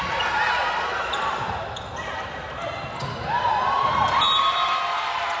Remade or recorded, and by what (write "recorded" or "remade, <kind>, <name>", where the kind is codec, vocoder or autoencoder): recorded